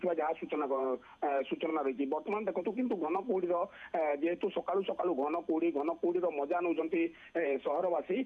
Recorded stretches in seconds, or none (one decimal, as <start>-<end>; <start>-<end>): 1.7-2.6; 4.1-6.8